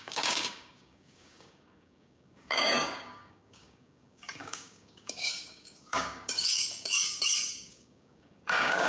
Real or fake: fake